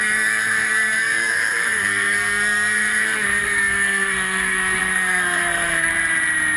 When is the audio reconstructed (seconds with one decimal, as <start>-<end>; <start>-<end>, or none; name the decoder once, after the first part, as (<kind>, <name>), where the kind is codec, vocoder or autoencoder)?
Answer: 0.0-5.9 (codec, SNAC)